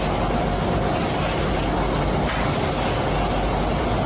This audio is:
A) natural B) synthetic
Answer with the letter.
A